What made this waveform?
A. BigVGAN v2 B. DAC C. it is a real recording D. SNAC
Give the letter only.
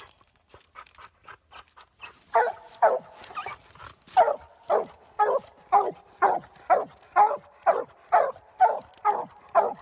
C